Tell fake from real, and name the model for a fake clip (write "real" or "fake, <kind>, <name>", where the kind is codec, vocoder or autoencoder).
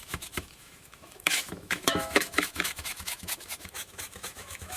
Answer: fake, autoencoder, DAC-VAE